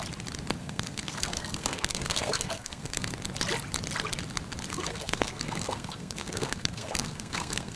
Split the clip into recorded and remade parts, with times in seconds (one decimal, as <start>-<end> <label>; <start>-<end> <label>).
0.0-0.6 recorded; 0.6-3.1 remade; 3.1-4.7 recorded; 4.7-7.8 remade